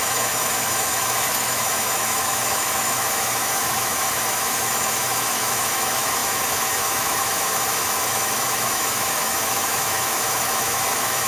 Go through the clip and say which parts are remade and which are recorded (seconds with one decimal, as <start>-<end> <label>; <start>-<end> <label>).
0.0-11.3 remade